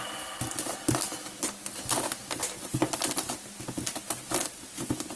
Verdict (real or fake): real